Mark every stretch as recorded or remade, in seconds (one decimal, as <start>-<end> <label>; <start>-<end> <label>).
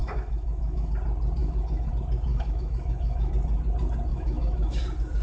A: 0.0-0.9 remade; 0.9-1.4 recorded; 1.4-1.9 remade; 1.9-2.3 recorded; 2.3-3.3 remade; 3.3-4.1 recorded; 4.1-4.8 remade; 4.8-5.2 recorded